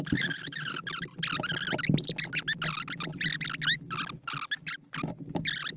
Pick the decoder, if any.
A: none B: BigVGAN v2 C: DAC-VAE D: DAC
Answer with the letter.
A